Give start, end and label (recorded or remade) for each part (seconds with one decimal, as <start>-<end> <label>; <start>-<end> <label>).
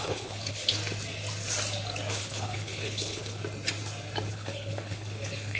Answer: 0.0-0.8 remade; 0.8-2.1 recorded; 2.1-3.4 remade; 3.4-4.3 recorded; 4.3-5.6 remade